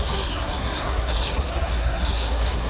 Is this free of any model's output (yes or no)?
no